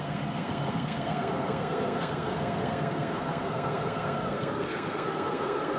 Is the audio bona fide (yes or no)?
no